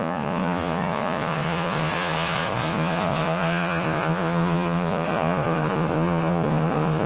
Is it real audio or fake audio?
fake